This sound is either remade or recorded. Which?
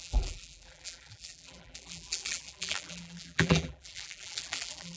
remade